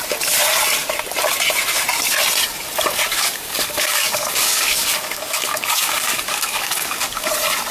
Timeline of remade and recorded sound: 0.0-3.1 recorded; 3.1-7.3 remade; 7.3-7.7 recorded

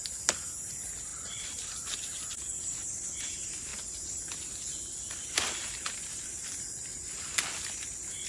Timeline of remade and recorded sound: 0.0-1.1 recorded; 1.1-2.6 remade; 2.6-8.3 recorded